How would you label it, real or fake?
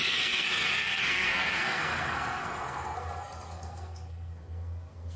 fake